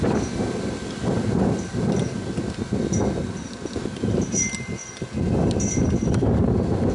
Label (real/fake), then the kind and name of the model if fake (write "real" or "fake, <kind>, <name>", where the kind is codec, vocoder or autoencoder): real